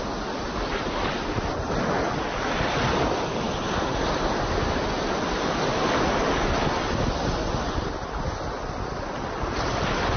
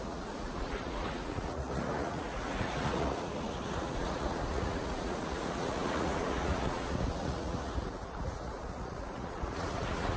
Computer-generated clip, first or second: second